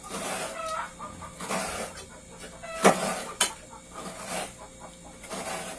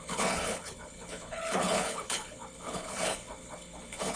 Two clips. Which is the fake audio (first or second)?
second